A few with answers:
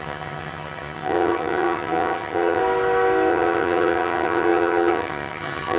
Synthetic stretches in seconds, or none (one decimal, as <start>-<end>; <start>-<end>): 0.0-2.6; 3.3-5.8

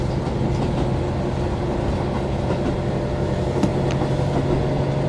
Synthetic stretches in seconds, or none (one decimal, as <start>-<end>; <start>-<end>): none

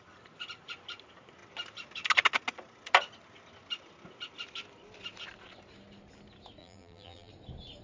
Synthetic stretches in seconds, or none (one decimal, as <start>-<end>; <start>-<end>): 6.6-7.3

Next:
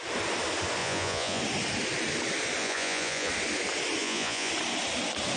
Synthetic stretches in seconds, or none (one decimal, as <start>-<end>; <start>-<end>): 0.8-1.4; 2.6-3.3; 4.0-4.5